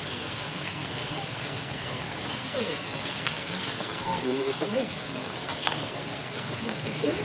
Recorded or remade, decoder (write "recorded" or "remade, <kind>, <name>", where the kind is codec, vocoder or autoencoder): remade, codec, SNAC